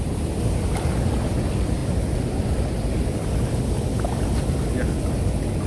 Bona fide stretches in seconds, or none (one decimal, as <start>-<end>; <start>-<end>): 0.0-5.7